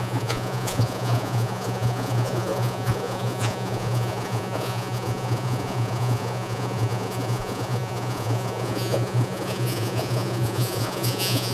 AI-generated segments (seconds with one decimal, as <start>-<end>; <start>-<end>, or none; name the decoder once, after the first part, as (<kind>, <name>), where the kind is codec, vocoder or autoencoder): 0.0-11.5 (vocoder, Vocos)